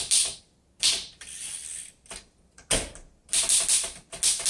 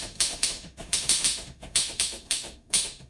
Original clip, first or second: first